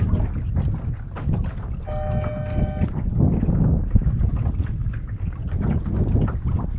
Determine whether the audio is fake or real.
real